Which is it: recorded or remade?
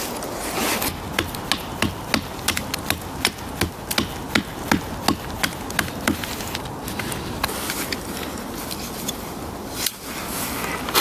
recorded